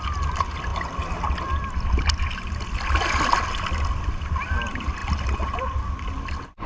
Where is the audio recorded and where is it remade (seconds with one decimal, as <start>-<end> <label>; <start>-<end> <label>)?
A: 0.0-6.7 recorded